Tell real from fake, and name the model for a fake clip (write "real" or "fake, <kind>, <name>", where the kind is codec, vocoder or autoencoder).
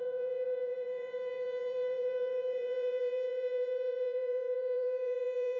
fake, vocoder, Vocos